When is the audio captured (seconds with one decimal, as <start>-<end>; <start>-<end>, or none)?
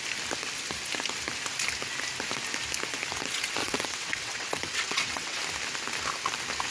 0.0-3.6; 5.4-6.7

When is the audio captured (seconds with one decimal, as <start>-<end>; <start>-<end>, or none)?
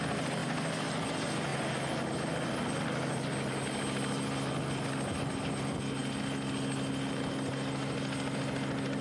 0.0-9.0